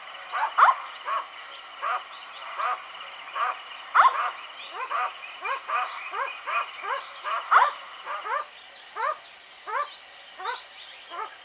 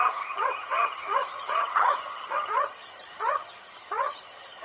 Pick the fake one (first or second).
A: second